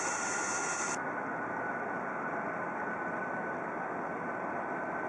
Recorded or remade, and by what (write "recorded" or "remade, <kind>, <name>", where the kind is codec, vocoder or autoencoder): recorded